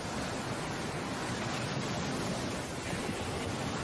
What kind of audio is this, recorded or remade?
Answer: recorded